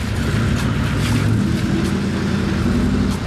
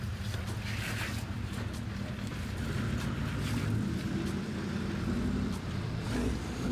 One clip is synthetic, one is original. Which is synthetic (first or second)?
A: second